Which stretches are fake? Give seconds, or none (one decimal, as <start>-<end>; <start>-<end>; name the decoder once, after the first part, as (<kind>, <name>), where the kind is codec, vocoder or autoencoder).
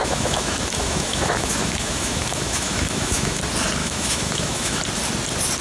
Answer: 0.0-3.4 (autoencoder, DAC-VAE); 3.8-4.8